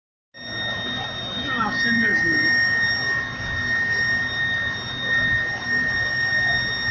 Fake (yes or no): no